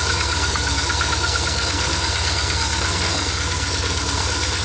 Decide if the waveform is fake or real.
fake